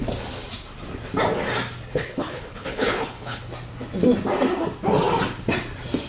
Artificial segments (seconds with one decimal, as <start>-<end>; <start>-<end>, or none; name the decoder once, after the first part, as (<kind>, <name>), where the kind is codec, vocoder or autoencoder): 1.9-3.4 (codec, HILCodec)